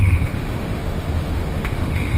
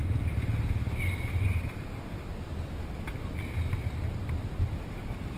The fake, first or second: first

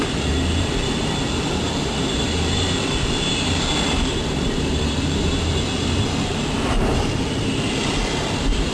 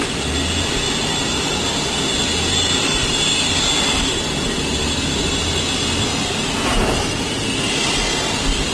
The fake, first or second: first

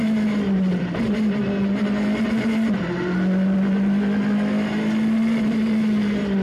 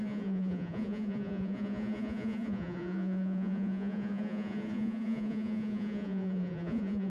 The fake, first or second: second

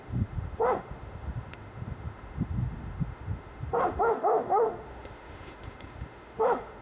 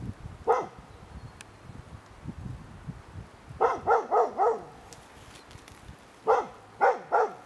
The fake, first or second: first